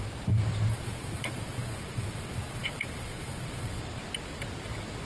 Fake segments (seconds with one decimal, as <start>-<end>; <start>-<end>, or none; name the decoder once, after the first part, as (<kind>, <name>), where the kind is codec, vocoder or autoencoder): 0.7-3.8 (vocoder, Vocos)

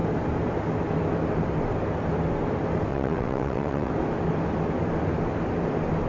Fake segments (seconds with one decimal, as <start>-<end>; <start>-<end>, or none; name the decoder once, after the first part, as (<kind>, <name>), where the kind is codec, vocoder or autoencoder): 2.9-3.9 (vocoder, WaveNeXt)

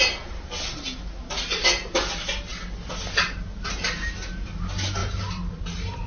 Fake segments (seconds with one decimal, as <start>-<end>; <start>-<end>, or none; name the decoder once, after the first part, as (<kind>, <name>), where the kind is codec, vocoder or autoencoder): none

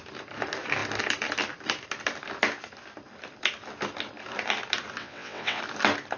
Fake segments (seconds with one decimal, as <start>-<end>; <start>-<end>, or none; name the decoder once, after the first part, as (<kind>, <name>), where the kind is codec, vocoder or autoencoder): 5.0-5.6 (vocoder, WaveNeXt)

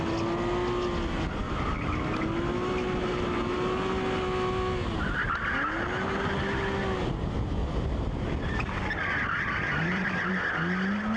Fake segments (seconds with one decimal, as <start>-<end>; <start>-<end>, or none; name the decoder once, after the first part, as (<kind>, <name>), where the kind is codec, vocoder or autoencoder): 7.6-10.3 (vocoder, BigVGAN v2)

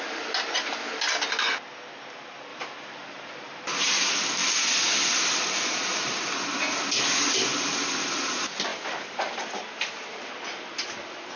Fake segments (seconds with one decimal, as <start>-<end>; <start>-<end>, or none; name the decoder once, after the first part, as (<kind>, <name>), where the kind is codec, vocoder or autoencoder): 2.5-3.9 (vocoder, BigVGAN v2); 8.7-10.2

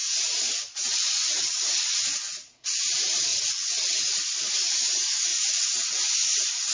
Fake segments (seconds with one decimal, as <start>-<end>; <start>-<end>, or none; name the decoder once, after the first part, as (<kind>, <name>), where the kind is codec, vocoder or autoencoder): 0.0-2.8 (vocoder, Vocos); 3.3-4.2; 5.3-5.9

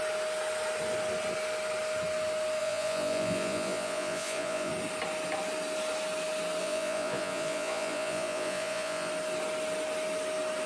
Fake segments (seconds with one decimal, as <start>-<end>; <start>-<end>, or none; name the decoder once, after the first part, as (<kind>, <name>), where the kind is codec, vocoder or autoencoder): 2.6-4.7 (vocoder, Vocos); 6.6-9.1